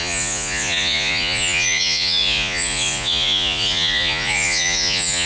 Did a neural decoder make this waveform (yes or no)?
yes